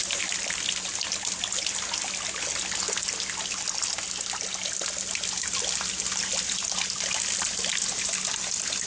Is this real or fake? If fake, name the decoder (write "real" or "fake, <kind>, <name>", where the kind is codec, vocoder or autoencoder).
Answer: real